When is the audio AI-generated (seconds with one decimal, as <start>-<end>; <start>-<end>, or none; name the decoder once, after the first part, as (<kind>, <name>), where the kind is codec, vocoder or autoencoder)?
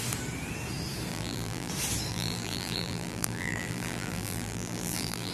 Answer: 1.1-1.7 (vocoder, BigVGAN v2); 2.1-5.3